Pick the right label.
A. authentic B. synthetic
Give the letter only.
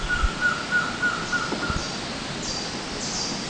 A